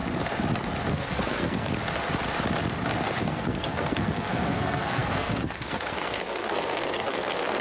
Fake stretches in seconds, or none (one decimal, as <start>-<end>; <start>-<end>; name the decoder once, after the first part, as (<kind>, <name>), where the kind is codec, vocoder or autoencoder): 0.9-1.7 (codec, SNAC); 3.2-7.6